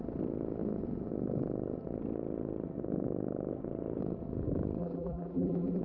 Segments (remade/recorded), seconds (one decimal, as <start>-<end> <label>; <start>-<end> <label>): 0.0-4.8 recorded; 4.8-5.8 remade